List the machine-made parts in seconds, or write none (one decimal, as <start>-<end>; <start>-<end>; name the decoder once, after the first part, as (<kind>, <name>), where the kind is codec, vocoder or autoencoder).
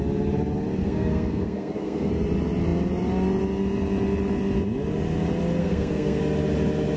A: 0.8-2.1 (codec, SNAC); 5.6-6.2